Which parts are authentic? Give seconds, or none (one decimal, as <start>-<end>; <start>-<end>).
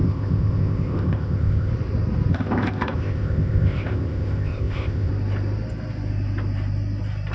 1.7-2.3; 5.1-7.3